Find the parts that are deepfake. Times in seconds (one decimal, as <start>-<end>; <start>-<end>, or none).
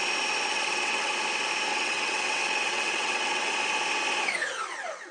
0.5-1.1; 1.7-3.5